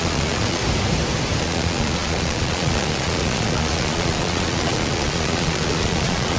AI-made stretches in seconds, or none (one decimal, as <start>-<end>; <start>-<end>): 0.0-0.6; 1.4-6.4